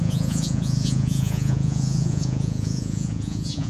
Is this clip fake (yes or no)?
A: yes